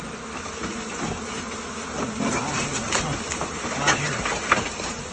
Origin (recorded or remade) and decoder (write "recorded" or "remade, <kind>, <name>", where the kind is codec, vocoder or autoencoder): recorded